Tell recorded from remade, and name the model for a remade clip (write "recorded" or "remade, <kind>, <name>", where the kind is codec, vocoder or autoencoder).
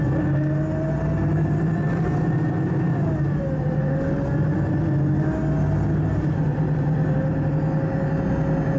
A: recorded